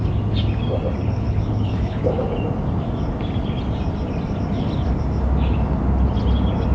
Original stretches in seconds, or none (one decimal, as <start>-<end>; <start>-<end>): 0.0-1.0; 2.1-6.7